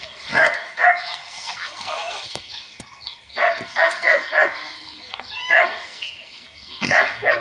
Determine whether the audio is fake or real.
fake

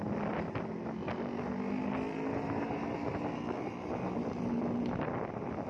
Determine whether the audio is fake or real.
real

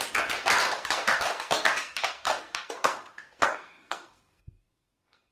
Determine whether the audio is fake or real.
fake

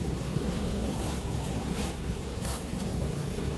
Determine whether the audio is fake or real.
fake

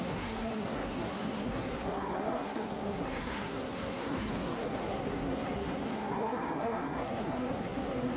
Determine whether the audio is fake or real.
fake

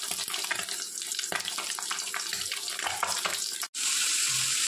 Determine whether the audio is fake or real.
real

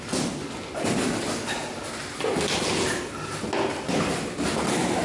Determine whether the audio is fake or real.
real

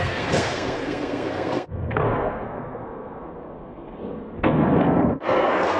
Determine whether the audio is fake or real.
fake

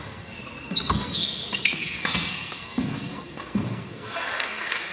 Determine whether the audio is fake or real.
fake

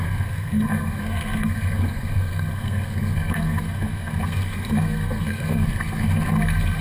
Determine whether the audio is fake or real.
fake